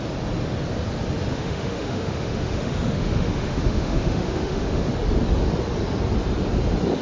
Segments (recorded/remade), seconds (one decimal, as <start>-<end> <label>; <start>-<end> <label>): 0.0-1.3 recorded; 1.3-4.9 remade; 4.9-7.0 recorded